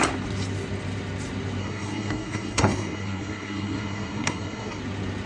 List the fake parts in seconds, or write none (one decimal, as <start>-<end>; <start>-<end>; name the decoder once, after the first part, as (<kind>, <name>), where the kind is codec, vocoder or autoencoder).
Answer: 1.6-4.8 (codec, SNAC)